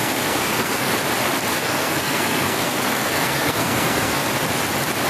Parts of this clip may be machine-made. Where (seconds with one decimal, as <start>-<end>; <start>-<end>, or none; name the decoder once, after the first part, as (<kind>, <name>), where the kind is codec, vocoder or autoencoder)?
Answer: 0.0-0.9 (codec, SNAC); 1.5-4.3